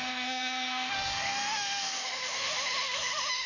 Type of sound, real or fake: fake